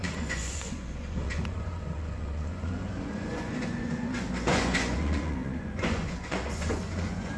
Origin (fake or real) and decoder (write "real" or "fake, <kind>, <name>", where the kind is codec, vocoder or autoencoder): fake, vocoder, Vocos